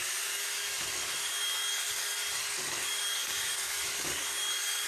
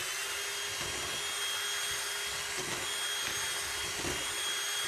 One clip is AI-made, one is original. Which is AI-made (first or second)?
first